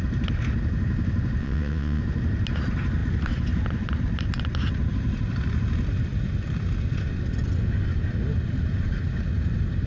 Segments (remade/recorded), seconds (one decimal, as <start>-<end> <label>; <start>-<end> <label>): 0.0-1.4 recorded; 1.4-2.0 remade; 2.0-9.9 recorded